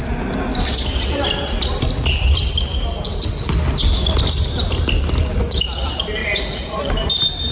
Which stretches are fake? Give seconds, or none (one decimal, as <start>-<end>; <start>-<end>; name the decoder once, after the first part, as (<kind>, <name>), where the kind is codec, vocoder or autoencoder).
6.2-6.9 (vocoder, Vocos)